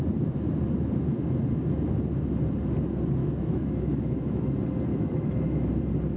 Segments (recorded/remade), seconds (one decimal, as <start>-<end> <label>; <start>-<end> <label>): 0.0-3.2 recorded; 3.2-4.5 remade; 4.5-4.9 recorded; 4.9-5.7 remade; 5.7-6.2 recorded